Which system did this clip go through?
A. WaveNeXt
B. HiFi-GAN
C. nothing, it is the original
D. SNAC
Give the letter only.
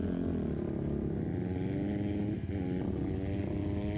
C